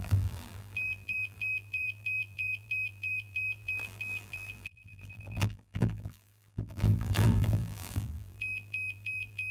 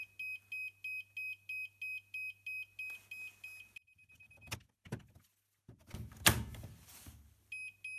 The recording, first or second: second